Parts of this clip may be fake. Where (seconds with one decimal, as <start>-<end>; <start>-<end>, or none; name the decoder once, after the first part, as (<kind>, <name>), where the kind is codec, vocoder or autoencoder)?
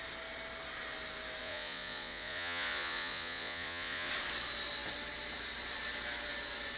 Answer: 1.4-4.1 (vocoder, Vocos)